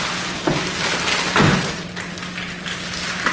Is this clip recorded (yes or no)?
yes